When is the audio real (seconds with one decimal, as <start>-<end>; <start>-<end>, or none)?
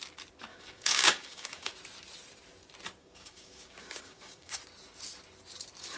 0.0-0.5; 1.7-3.0; 4.6-6.0